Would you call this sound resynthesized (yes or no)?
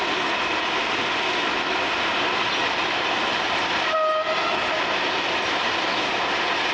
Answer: no